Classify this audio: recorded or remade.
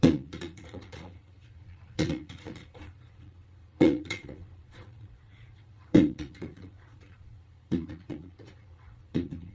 remade